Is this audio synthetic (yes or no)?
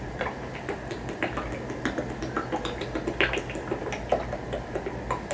no